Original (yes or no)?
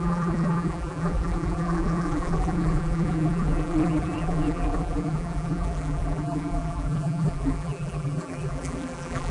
no